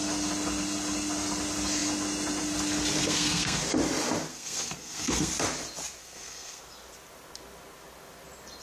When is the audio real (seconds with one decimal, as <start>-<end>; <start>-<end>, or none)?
0.0-3.0; 3.6-4.3; 5.3-6.0; 6.6-8.6